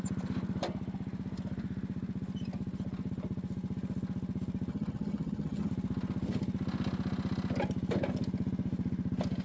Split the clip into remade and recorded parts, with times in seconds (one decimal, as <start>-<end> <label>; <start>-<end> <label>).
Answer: 0.0-4.7 recorded; 4.7-5.7 remade; 5.7-9.4 recorded